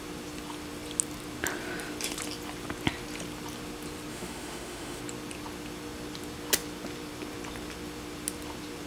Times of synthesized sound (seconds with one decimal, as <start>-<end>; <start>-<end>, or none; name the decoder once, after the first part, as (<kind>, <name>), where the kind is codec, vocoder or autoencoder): 4.1-5.0 (autoencoder, DAC-VAE)